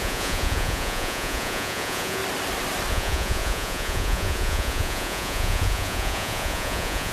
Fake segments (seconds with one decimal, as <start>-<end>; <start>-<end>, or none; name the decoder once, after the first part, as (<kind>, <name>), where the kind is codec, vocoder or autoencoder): 0.0-2.2 (vocoder, Vocos); 2.9-7.1